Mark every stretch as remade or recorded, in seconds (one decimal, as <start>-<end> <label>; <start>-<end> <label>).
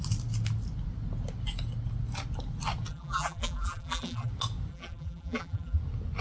0.0-2.9 recorded; 2.9-4.3 remade; 4.3-4.7 recorded; 4.7-5.8 remade; 5.8-6.2 recorded